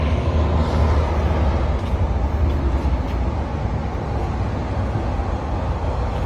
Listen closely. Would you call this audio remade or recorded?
recorded